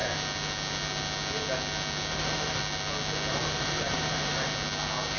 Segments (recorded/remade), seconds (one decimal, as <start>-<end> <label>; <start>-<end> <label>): 0.0-2.1 recorded; 2.1-2.6 remade; 2.6-3.3 recorded; 3.3-4.5 remade; 4.5-5.2 recorded